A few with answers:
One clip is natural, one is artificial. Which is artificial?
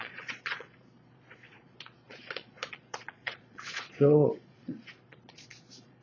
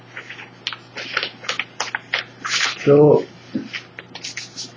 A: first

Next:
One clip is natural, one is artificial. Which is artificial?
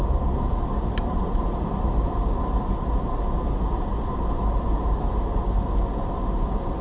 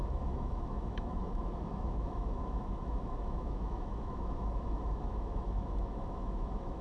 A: second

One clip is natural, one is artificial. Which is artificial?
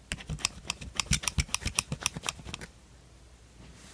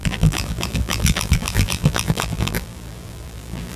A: second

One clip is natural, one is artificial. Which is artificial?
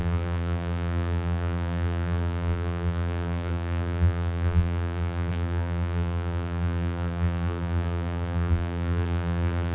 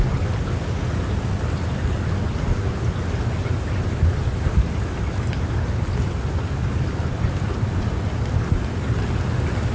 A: first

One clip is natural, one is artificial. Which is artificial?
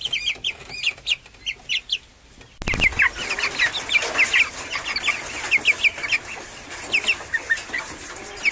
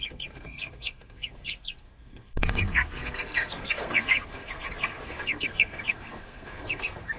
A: second